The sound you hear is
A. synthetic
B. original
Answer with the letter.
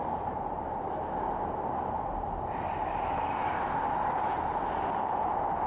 B